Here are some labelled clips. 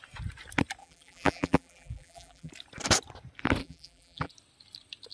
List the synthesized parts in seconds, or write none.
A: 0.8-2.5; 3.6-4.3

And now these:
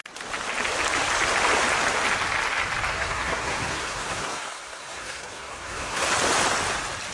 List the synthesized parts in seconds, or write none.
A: 2.9-6.1

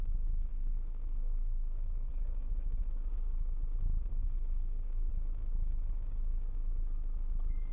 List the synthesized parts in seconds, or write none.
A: 0.5-2.1; 4.1-5.1

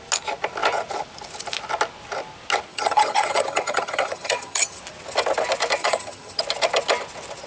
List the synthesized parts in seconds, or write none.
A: 2.7-4.8; 5.8-6.4